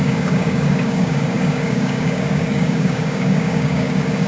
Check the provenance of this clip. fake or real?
fake